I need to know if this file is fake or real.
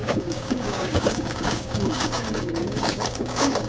fake